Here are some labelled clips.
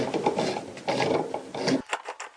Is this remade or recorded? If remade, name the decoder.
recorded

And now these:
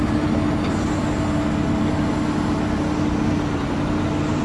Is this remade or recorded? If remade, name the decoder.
recorded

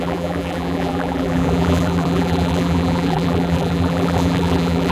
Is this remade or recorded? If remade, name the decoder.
remade, vocoder, BigVGAN v2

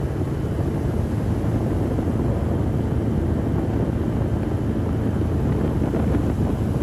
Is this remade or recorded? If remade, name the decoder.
recorded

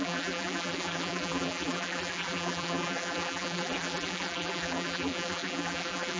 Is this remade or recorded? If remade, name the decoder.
remade, vocoder, BigVGAN v2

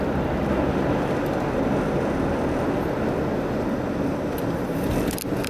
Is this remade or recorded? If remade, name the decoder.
recorded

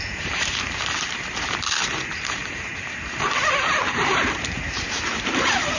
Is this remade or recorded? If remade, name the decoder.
remade, vocoder, BigVGAN v2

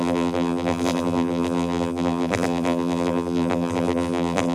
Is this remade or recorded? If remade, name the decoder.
remade, vocoder, BigVGAN v2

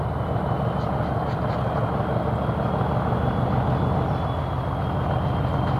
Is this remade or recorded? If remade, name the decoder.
recorded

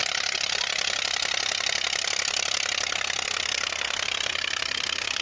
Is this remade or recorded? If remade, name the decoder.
recorded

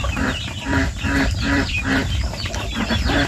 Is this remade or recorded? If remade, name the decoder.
remade, vocoder, BigVGAN v2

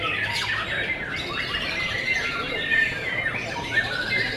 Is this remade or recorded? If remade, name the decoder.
remade, vocoder, BigVGAN v2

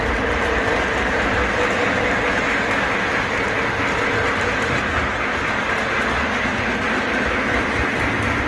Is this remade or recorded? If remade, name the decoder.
recorded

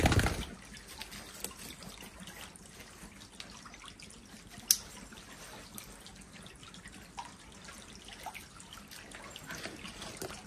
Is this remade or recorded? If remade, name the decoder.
recorded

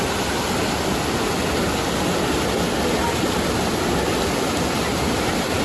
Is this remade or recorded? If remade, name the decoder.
recorded